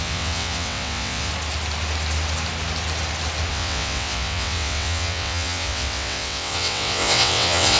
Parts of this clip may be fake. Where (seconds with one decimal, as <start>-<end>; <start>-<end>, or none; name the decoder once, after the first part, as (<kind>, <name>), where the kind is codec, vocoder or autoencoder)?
0.0-1.3 (vocoder, WaveNeXt); 3.5-7.8